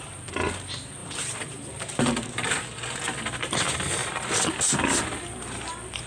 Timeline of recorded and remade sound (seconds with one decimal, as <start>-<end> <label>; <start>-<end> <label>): 0.0-1.0 recorded; 1.0-2.6 remade; 2.6-6.1 recorded